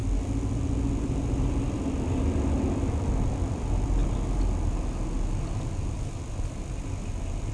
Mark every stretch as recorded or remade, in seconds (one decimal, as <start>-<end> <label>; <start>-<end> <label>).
0.0-1.0 recorded; 1.0-4.0 remade; 4.0-6.2 recorded; 6.2-7.5 remade